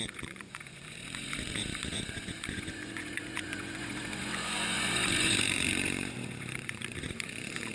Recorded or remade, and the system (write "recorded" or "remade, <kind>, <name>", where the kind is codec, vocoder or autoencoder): remade, vocoder, Vocos